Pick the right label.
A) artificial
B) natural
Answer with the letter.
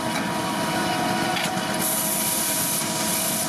B